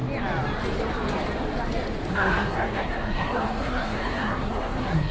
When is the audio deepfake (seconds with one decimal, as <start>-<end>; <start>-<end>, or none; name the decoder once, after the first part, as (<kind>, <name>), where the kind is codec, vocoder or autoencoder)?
2.1-5.1 (codec, SNAC)